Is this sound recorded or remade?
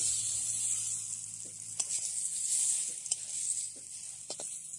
recorded